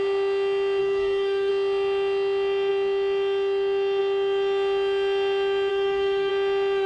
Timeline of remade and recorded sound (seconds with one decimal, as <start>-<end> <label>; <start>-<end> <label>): 0.0-0.8 recorded; 0.8-1.5 remade; 1.5-5.7 recorded; 5.7-6.3 remade; 6.3-6.9 recorded